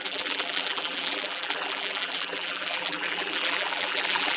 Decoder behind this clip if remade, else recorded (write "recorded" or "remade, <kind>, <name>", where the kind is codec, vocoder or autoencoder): remade, vocoder, BigVGAN v2